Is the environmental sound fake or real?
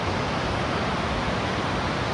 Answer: real